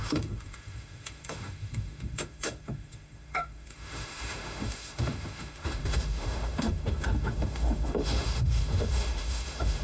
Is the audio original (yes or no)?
no